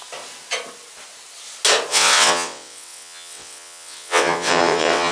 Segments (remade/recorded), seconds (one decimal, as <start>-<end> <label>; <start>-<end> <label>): 0.0-1.9 recorded; 1.9-5.1 remade